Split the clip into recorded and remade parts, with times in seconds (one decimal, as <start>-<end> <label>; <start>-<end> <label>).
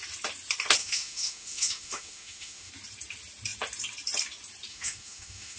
0.0-0.8 recorded; 0.8-2.7 remade; 2.7-4.7 recorded; 4.7-5.6 remade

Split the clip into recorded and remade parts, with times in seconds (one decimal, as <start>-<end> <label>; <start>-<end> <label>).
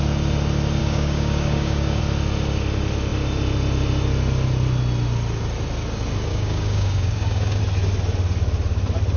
0.0-0.8 recorded; 0.8-2.0 remade; 2.0-6.3 recorded; 6.3-7.6 remade; 7.6-9.2 recorded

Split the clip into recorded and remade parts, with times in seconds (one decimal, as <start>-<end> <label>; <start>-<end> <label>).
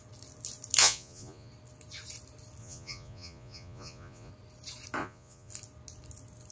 0.0-0.8 recorded; 0.8-1.5 remade; 1.5-2.6 recorded; 2.6-4.3 remade; 4.3-5.0 recorded; 5.0-5.5 remade; 5.5-6.5 recorded